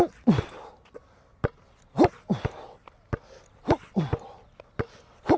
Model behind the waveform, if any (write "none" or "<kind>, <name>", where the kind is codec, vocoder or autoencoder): none